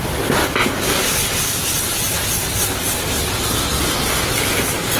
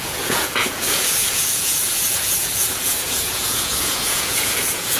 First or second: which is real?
first